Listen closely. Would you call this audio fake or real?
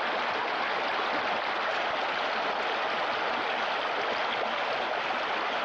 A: real